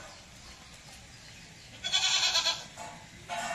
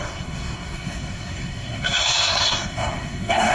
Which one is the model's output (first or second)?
second